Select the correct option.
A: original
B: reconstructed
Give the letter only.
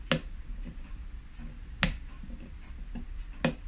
A